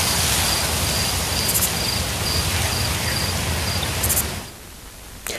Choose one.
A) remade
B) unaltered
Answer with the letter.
B